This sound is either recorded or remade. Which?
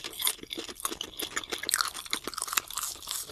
recorded